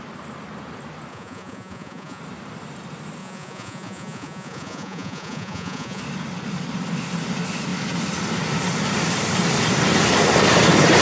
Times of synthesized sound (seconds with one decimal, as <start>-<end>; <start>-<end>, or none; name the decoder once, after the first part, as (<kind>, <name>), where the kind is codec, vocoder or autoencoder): 1.1-2.2 (vocoder, Vocos); 3.2-6.0